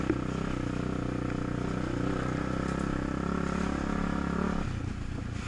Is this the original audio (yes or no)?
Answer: yes